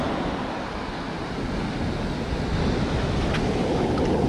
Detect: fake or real real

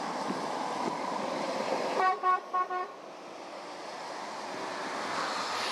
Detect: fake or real real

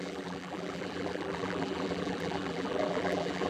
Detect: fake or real fake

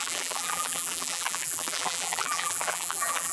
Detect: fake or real fake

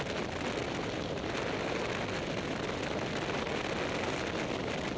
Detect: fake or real real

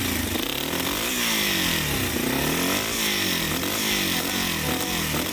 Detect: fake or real real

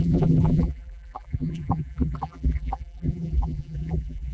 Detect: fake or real fake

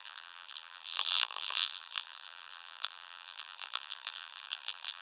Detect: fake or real fake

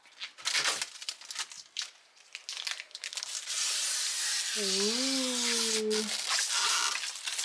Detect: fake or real real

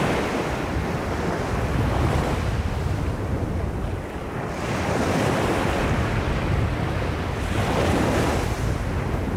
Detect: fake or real real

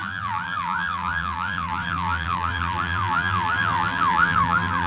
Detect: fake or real fake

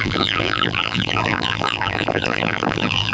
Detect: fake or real fake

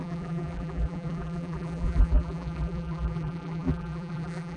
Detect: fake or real fake